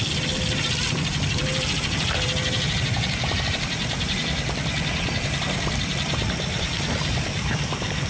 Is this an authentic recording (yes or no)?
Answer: no